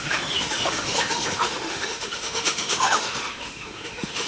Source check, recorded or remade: remade